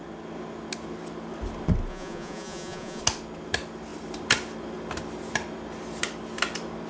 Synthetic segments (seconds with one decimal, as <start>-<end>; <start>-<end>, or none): 1.9-3.0